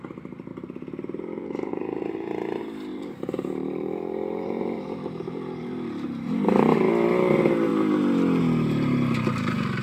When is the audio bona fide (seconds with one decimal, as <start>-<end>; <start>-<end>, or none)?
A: 0.0-0.5; 1.8-2.9; 5.9-9.8